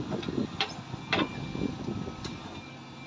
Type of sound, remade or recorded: recorded